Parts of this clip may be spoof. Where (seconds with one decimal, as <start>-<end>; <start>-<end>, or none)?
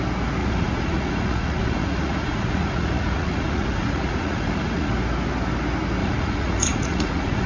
0.4-4.9; 6.0-7.5